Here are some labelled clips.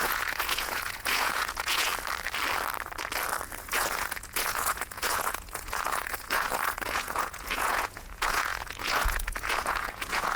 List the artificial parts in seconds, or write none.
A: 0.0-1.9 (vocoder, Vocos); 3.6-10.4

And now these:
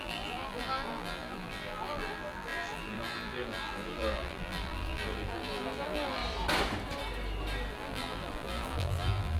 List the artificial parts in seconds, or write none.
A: 0.0-6.2 (vocoder, BigVGAN v2); 7.7-9.4

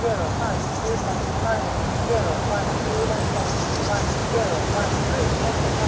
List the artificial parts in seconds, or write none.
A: 4.2-5.3 (vocoder, BigVGAN v2)

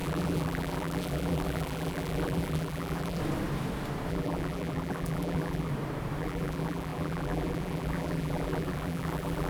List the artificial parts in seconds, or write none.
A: 0.0-3.2 (vocoder, BigVGAN v2); 4.1-5.7; 6.2-9.5

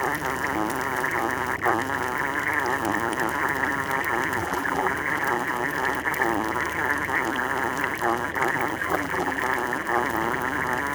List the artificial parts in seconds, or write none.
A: 4.4-4.9 (vocoder, BigVGAN v2); 8.8-9.4

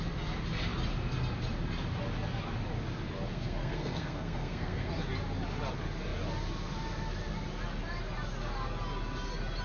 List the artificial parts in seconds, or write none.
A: 3.3-4.9 (codec, SNAC)

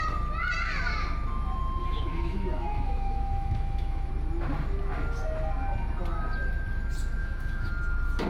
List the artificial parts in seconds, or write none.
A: 1.8-4.1 (autoencoder, DAC-VAE); 7.2-7.7

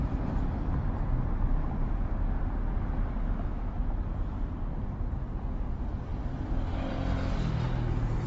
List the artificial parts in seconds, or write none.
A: none